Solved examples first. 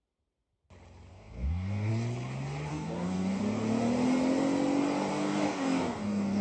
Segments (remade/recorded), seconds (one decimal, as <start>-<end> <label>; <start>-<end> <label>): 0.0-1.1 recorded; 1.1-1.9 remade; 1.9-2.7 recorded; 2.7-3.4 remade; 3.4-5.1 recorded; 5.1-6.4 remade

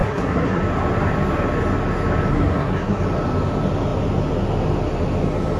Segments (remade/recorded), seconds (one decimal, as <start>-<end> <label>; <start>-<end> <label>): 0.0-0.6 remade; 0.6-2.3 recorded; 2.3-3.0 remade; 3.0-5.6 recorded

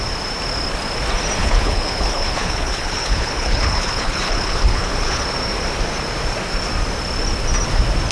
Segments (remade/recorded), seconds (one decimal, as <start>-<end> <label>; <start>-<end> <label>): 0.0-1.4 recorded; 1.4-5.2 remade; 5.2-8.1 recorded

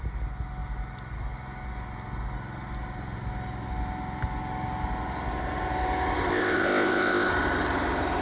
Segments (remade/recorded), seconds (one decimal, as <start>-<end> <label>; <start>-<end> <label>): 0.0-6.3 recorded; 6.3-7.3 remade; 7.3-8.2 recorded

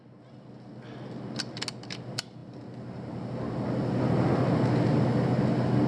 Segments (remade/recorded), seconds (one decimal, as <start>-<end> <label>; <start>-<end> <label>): 0.0-5.9 recorded

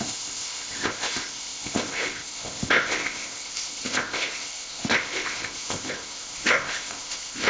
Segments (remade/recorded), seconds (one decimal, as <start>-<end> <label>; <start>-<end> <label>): 0.0-7.5 remade